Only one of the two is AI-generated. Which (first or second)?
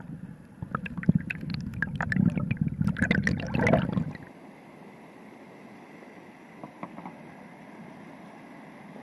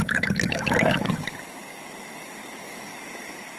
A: second